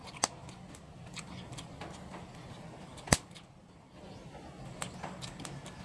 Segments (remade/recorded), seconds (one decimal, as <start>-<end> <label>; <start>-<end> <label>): 0.0-5.8 recorded